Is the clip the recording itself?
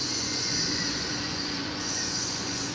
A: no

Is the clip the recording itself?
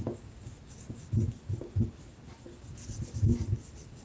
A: yes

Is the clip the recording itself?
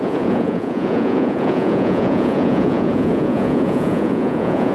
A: no